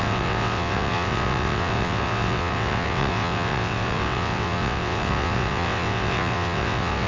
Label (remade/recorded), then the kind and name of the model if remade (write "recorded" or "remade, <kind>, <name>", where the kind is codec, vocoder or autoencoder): remade, vocoder, WaveNeXt